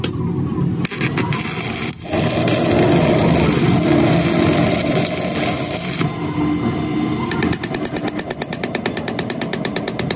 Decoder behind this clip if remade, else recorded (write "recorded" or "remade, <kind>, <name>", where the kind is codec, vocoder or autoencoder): recorded